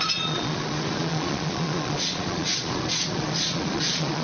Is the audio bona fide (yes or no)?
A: no